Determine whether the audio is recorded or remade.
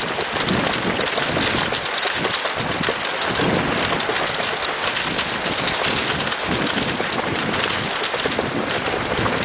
recorded